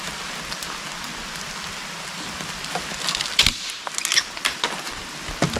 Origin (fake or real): real